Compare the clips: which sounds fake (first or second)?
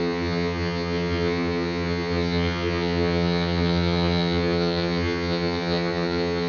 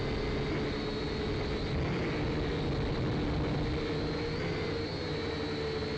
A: first